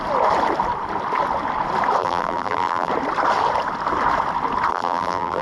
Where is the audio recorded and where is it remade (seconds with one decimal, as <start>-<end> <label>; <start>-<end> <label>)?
0.0-2.0 recorded; 2.0-2.9 remade; 2.9-4.7 recorded; 4.7-5.4 remade